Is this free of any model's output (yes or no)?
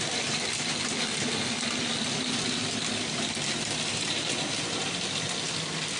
no